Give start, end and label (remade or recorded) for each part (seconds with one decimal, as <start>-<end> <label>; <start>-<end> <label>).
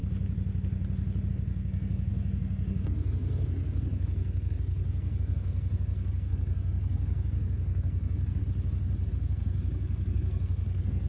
0.0-1.3 recorded; 1.3-8.4 remade; 8.4-9.1 recorded; 9.1-11.1 remade